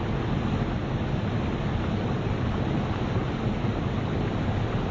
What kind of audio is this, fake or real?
real